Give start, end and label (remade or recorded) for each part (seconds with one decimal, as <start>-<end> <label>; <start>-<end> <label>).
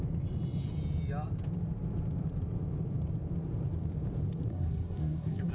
0.0-4.5 recorded; 4.5-5.5 remade